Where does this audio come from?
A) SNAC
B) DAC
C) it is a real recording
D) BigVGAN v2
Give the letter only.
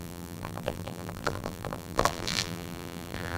D